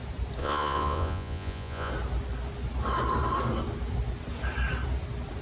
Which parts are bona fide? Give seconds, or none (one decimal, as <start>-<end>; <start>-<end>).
0.0-0.4; 1.9-5.4